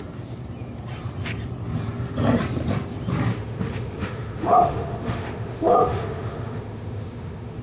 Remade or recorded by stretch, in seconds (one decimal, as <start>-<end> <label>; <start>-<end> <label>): 0.0-3.3 recorded; 3.3-7.6 remade